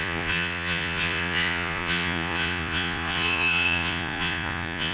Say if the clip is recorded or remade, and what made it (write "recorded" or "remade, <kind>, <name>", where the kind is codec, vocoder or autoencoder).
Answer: remade, vocoder, Vocos